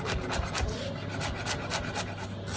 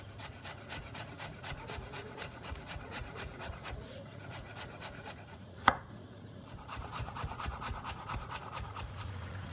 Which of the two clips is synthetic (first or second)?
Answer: second